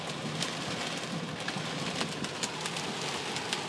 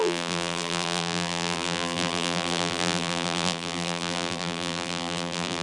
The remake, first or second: second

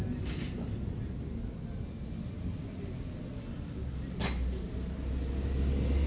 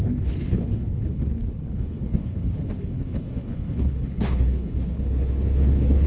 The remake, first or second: second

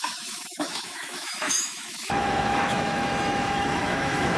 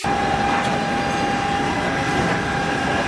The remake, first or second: first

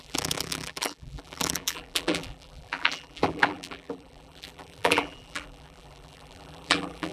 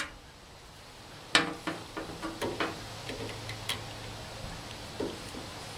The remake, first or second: first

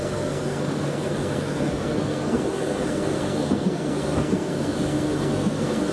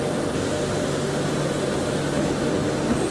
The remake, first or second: first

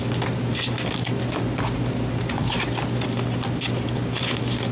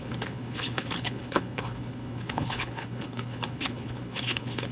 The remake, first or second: second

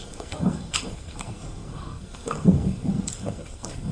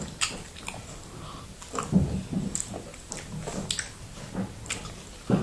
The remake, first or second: first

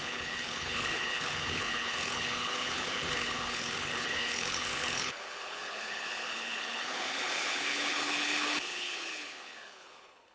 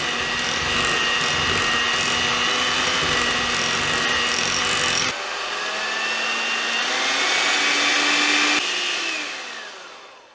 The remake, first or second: first